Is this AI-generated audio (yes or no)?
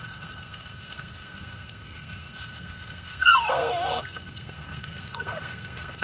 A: yes